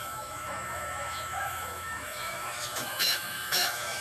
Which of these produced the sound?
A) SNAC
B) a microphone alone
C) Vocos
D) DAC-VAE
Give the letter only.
D